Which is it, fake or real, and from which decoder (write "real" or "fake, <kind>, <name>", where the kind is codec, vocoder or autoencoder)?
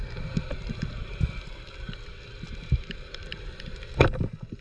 fake, vocoder, BigVGAN v2